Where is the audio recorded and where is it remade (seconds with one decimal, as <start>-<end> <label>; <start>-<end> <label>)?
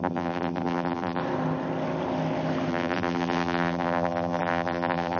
0.0-1.2 remade; 1.2-2.7 recorded; 2.7-5.2 remade